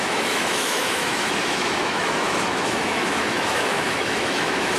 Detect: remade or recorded remade